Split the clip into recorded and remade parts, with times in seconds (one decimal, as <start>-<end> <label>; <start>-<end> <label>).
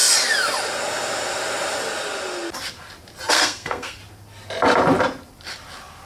0.0-3.3 recorded; 3.3-4.0 remade; 4.0-6.1 recorded